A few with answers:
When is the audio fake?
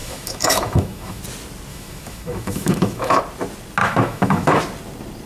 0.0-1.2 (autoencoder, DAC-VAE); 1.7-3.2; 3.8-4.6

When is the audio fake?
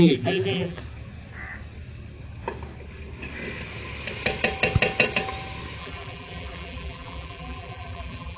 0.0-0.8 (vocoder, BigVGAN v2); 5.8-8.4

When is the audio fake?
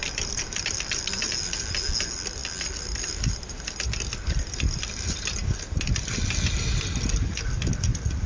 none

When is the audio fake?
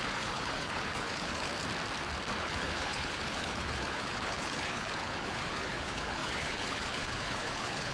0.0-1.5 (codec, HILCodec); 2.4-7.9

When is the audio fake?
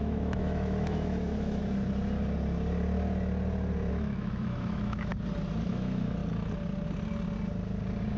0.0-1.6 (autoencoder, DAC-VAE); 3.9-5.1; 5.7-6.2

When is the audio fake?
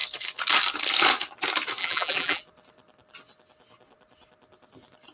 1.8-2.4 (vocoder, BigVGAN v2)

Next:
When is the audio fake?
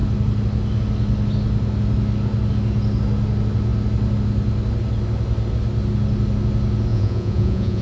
6.9-7.8 (vocoder, Vocos)